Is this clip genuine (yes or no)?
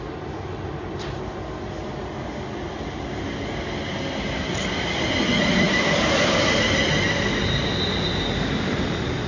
yes